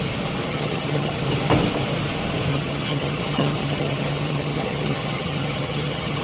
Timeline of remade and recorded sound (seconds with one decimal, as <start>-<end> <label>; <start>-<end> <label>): 0.0-0.5 recorded; 0.5-1.2 remade; 1.2-2.5 recorded; 2.5-6.2 remade